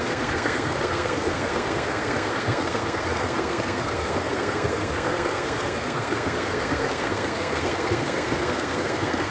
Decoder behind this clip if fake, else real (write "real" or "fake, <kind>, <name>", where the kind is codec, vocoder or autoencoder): fake, codec, SNAC